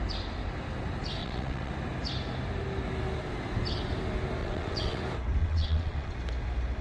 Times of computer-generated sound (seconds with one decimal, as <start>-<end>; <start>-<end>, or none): 1.2-1.7; 4.4-5.0; 5.4-6.1